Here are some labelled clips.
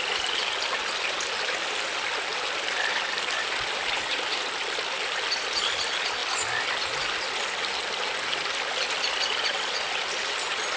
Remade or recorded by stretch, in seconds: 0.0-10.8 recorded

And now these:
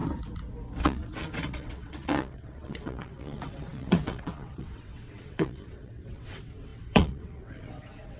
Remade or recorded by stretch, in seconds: 0.0-0.8 recorded; 0.8-8.2 remade